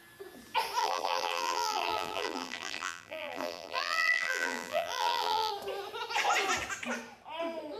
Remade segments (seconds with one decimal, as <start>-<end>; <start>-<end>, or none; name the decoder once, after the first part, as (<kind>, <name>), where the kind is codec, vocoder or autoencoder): 0.8-5.5 (vocoder, BigVGAN v2)